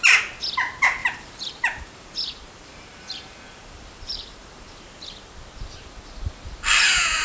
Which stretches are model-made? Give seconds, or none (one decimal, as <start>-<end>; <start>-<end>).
1.0-5.3